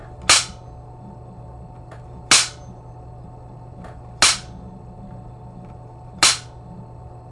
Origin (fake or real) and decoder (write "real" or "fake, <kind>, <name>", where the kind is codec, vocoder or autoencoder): real